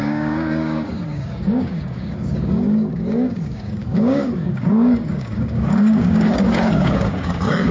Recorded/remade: remade